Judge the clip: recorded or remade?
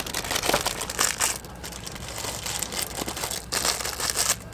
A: recorded